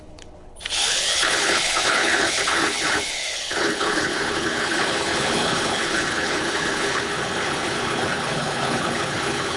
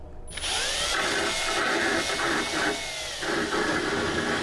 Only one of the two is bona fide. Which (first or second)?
second